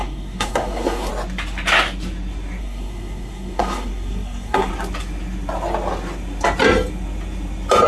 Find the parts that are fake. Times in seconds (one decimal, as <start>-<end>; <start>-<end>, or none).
0.0-1.1; 2.6-4.7